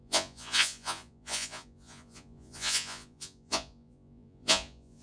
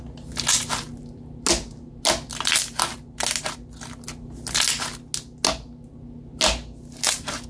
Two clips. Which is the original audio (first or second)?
second